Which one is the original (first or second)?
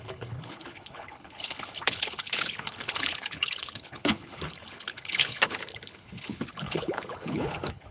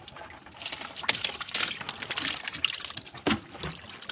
second